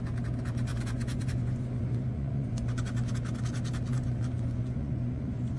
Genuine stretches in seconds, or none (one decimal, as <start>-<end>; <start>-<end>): 0.0-0.7; 2.8-3.9